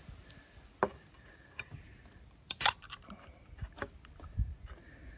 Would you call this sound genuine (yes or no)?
yes